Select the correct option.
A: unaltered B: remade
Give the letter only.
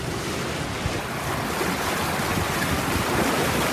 A